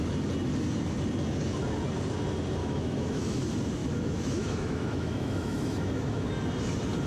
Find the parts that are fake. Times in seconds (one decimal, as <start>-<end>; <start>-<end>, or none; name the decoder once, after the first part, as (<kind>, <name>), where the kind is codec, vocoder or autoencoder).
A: 2.6-3.2 (autoencoder, DAC-VAE); 3.8-6.3